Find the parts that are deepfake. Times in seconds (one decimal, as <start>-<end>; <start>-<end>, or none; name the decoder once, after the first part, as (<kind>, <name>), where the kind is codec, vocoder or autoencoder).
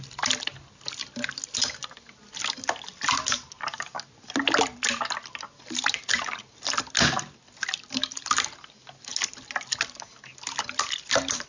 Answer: none